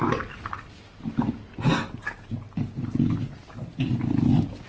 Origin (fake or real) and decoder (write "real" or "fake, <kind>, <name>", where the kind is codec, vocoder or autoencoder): real